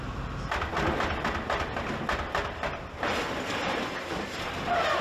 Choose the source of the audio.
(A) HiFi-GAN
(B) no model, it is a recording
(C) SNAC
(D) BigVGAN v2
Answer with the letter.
B